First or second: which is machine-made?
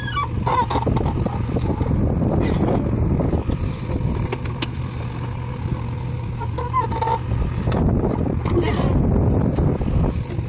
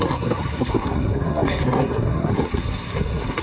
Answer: second